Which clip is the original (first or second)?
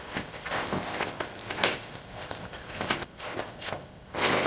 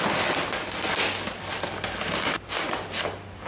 second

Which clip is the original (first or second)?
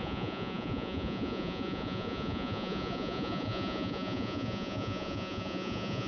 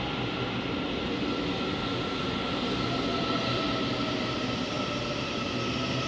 second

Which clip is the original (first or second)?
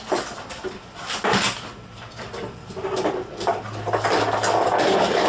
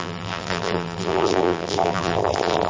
first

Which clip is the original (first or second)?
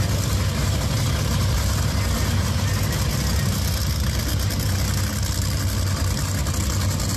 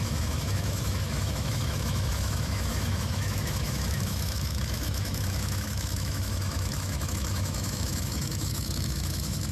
first